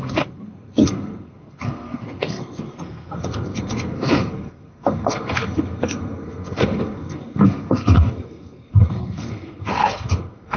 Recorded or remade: remade